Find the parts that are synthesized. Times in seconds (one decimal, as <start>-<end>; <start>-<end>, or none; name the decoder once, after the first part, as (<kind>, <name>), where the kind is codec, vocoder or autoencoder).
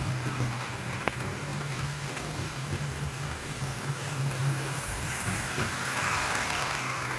0.0-7.2 (codec, DAC)